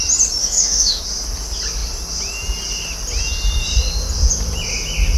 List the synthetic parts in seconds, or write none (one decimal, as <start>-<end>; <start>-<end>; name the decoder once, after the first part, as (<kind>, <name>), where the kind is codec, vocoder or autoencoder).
0.4-1.0 (autoencoder, DAC-VAE)

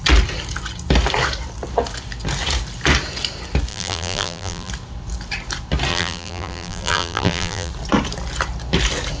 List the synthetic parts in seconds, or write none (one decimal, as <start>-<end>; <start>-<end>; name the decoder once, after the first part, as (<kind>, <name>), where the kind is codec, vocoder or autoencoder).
3.7-4.7 (vocoder, BigVGAN v2); 5.9-7.7

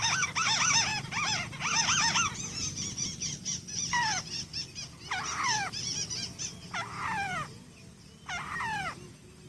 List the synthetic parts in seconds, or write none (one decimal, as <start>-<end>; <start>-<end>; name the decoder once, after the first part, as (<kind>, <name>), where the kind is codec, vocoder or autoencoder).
none

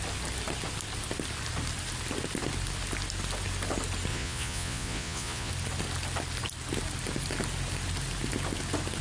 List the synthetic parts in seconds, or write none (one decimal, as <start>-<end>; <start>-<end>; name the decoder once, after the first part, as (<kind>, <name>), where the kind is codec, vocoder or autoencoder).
4.1-5.5 (vocoder, Vocos)

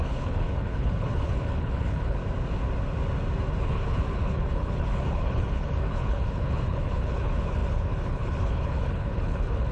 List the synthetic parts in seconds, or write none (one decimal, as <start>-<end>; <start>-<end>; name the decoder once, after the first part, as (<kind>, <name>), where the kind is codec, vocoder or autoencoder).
0.0-2.2 (codec, HILCodec); 3.6-9.7

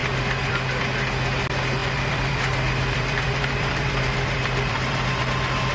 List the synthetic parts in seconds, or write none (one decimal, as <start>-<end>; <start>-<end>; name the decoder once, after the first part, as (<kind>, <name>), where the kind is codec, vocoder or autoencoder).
1.8-5.2 (vocoder, BigVGAN v2)

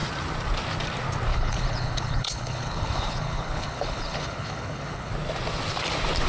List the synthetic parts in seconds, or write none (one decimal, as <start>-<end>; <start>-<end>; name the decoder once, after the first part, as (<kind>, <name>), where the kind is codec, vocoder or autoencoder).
1.3-5.1 (codec, HILCodec)